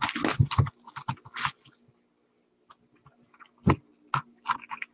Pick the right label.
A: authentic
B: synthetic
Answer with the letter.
A